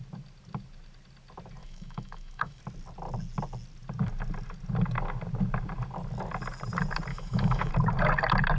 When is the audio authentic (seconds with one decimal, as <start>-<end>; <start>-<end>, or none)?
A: 0.0-1.6; 2.6-7.1; 7.7-8.6